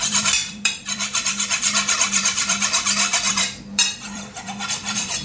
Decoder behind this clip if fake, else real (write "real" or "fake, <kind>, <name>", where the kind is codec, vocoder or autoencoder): fake, vocoder, BigVGAN v2